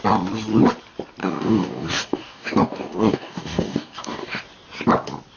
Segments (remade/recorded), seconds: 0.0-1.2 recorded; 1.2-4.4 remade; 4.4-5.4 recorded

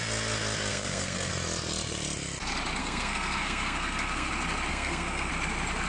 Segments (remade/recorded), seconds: 0.0-0.7 recorded; 0.7-1.3 remade; 1.3-2.8 recorded; 2.8-4.3 remade; 4.3-4.7 recorded; 4.7-5.3 remade; 5.3-5.9 recorded

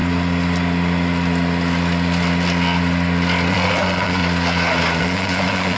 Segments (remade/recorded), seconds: 0.0-3.5 recorded; 3.5-4.2 remade; 4.2-5.0 recorded; 5.0-5.8 remade

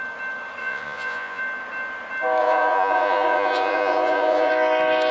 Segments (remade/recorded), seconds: 0.0-0.6 recorded; 0.6-1.4 remade; 1.4-2.4 recorded; 2.4-4.5 remade; 4.5-5.1 recorded